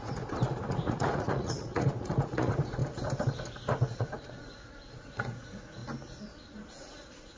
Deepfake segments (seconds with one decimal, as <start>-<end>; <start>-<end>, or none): 0.0-2.8; 3.8-5.8; 6.7-7.4